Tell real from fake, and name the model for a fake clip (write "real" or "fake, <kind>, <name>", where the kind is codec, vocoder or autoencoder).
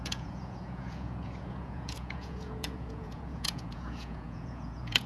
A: fake, vocoder, Vocos